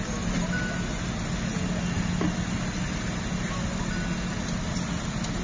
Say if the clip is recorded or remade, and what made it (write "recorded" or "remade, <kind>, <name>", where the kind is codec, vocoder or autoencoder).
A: recorded